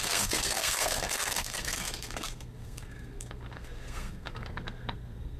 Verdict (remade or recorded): remade